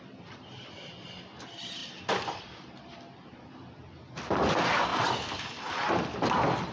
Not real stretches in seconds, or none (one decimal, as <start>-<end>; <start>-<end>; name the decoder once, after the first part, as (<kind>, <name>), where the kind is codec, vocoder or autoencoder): 0.0-4.9 (vocoder, BigVGAN v2)